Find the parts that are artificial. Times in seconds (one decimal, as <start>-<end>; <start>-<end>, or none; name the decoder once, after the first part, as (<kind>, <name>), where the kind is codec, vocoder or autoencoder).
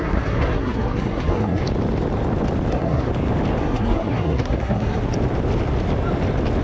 0.0-1.6 (codec, SNAC); 2.7-3.1; 3.6-5.0